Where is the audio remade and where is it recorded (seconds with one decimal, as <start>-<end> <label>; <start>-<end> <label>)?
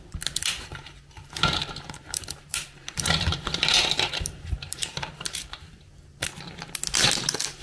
0.0-1.2 recorded; 1.2-5.8 remade; 5.8-7.6 recorded